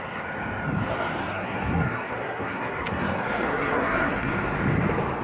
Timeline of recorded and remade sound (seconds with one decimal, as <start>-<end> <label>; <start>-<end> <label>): 0.0-1.2 recorded; 1.2-4.3 remade; 4.3-5.2 recorded